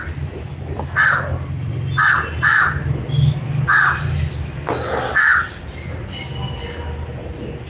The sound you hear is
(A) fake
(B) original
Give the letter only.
B